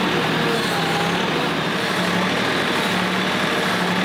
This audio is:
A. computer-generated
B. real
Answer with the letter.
B